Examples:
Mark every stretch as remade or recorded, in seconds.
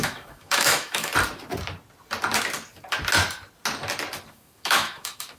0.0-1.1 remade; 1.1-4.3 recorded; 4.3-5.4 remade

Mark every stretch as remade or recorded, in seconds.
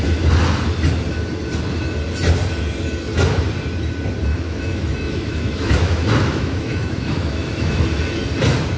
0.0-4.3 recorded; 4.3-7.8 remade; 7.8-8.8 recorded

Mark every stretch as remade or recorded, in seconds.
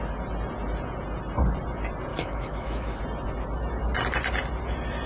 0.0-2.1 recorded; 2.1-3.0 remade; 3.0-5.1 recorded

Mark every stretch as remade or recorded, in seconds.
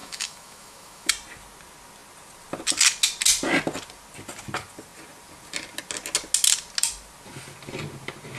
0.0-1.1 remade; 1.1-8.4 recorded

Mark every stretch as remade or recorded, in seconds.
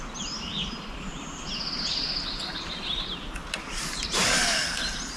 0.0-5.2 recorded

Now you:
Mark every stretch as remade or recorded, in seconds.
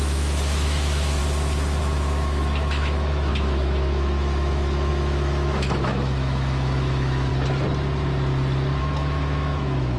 0.0-1.2 remade; 1.2-1.8 recorded; 1.8-7.3 remade; 7.3-8.8 recorded; 8.8-10.0 remade